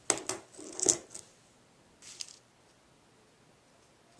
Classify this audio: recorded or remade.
recorded